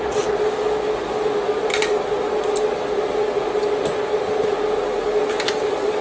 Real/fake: real